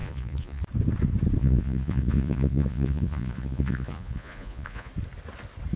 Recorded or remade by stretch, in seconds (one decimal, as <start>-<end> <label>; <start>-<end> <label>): 0.0-0.6 remade; 0.6-1.4 recorded; 1.4-4.9 remade; 4.9-5.8 recorded